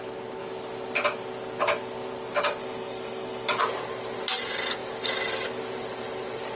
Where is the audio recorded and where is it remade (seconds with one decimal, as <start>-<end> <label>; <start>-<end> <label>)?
0.0-2.6 recorded; 2.6-3.6 remade; 3.6-6.6 recorded